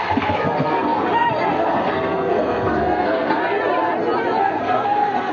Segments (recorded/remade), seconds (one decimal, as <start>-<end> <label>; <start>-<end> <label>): 0.0-3.4 remade; 3.4-4.4 recorded; 4.4-5.3 remade